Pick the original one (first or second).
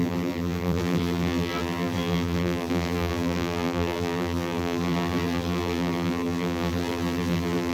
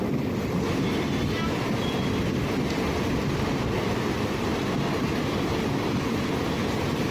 second